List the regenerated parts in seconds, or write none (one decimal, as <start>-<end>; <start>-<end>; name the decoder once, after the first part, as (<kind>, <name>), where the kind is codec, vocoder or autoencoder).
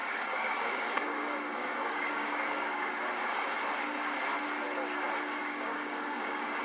0.0-2.9 (codec, DAC); 5.4-6.6